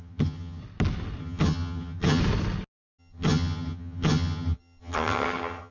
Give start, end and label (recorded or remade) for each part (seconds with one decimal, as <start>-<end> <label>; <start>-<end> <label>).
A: 0.0-0.6 remade; 0.6-1.2 recorded; 1.2-2.2 remade; 2.2-3.0 recorded; 3.0-5.7 remade